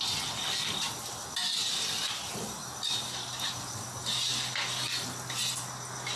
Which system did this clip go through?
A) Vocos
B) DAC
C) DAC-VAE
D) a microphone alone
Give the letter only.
D